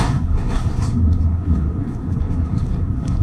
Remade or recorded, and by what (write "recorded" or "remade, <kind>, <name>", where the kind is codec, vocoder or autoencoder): remade, codec, SNAC